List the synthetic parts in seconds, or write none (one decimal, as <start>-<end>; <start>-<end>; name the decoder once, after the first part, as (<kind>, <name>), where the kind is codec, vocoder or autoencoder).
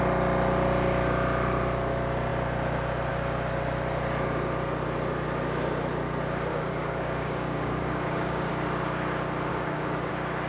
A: 6.5-8.5 (codec, DAC); 9.5-10.1